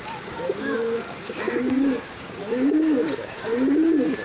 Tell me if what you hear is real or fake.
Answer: fake